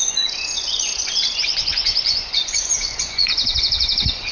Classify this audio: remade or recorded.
remade